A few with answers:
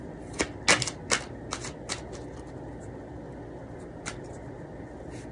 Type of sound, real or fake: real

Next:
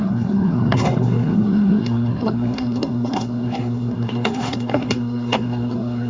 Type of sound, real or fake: fake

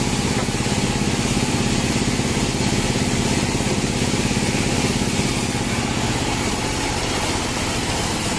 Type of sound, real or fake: real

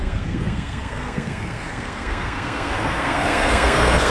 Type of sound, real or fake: fake